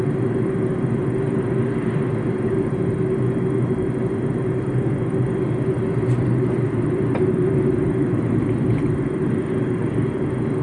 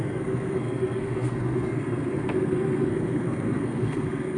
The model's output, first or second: second